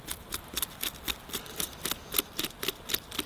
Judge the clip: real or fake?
real